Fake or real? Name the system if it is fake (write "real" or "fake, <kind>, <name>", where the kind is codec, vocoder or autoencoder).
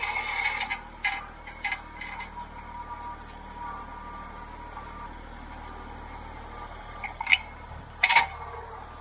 real